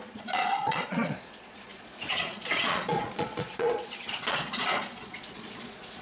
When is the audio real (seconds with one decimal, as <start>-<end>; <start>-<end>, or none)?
none